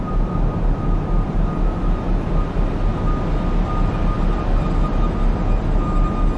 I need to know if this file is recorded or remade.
recorded